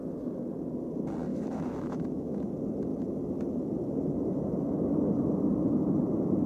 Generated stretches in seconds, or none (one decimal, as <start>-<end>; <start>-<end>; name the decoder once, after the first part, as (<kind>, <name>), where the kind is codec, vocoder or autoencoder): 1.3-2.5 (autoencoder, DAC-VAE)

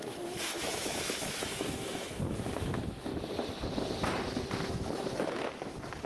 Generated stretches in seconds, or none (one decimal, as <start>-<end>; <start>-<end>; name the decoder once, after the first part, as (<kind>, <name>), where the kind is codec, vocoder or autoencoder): 0.0-3.1 (autoencoder, DAC-VAE); 4.7-6.1

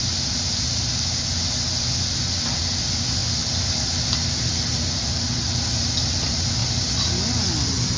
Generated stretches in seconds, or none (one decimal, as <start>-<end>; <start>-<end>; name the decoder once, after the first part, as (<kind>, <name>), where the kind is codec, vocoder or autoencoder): none